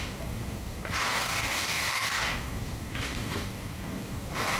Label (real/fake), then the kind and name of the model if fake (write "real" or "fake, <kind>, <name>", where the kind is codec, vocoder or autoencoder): fake, codec, DAC